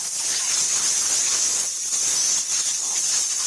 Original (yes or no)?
yes